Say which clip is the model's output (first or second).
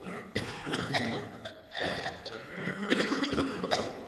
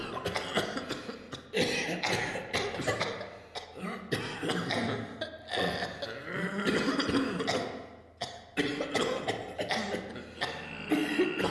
first